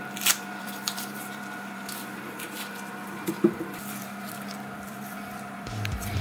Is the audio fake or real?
fake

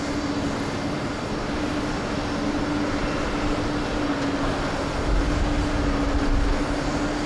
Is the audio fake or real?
real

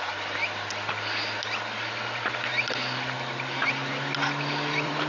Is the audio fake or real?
real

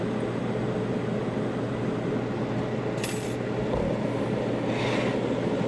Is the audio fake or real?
real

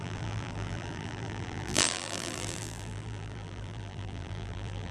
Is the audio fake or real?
fake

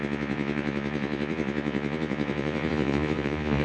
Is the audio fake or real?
fake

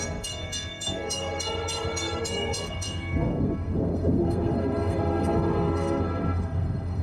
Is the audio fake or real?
fake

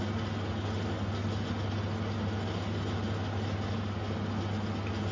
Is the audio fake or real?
real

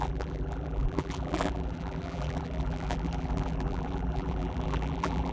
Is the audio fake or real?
fake